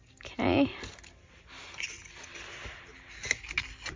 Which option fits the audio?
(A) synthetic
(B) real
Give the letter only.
B